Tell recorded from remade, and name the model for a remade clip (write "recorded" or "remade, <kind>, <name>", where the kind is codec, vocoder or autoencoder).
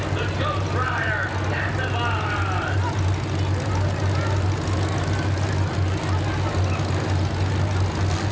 recorded